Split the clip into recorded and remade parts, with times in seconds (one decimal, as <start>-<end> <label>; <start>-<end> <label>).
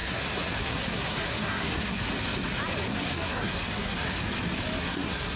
0.0-2.1 remade; 2.1-2.9 recorded; 2.9-4.3 remade; 4.3-4.8 recorded; 4.8-5.4 remade